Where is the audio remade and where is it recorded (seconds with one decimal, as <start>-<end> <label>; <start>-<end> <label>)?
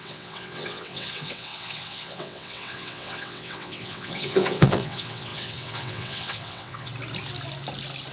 0.0-6.9 remade; 6.9-8.1 recorded